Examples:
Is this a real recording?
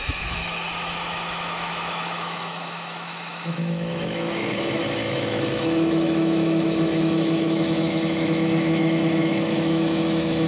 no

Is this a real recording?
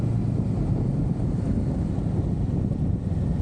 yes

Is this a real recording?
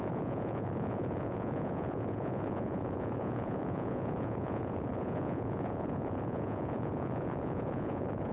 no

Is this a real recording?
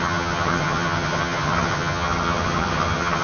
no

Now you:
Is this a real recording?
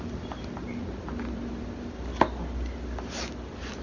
yes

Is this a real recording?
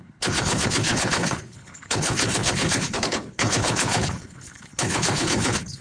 no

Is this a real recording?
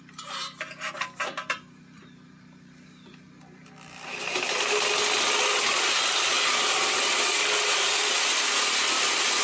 yes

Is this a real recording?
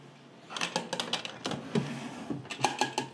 yes